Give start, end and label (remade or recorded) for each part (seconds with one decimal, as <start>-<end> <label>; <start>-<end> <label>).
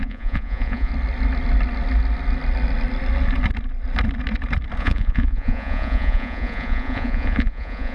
0.0-0.9 remade; 0.9-4.8 recorded; 4.8-7.9 remade